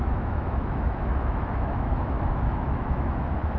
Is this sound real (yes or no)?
no